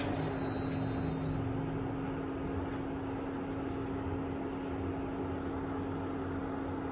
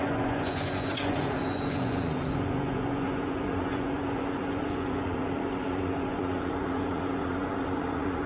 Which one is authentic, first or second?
first